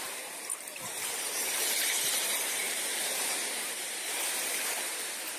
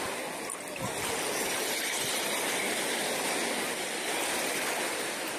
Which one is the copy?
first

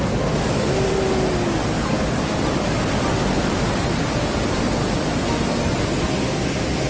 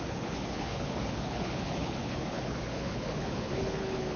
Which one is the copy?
second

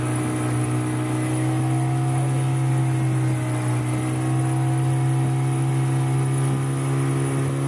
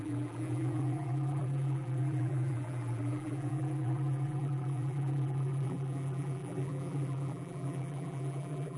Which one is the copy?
second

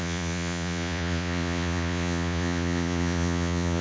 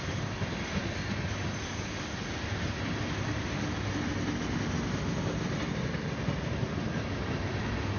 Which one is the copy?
first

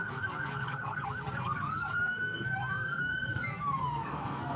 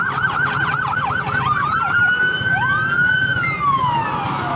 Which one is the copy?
first